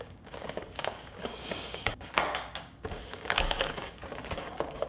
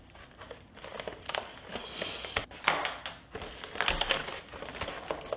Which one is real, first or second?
second